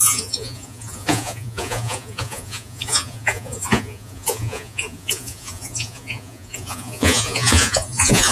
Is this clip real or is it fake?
fake